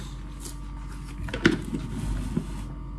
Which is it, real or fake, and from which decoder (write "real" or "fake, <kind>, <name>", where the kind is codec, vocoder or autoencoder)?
real